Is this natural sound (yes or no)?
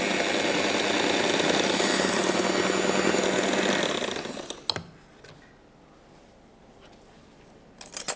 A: yes